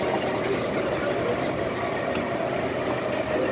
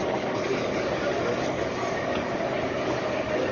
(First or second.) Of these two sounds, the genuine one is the first